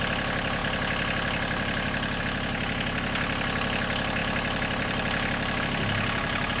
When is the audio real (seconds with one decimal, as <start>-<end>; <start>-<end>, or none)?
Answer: 0.0-4.2; 5.6-6.6